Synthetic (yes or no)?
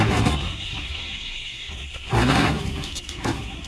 yes